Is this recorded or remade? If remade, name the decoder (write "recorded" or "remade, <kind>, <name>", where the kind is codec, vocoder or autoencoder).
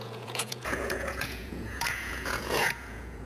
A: remade, vocoder, Vocos